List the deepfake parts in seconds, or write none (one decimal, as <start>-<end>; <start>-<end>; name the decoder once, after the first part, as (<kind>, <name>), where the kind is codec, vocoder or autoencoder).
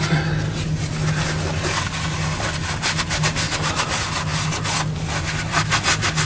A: none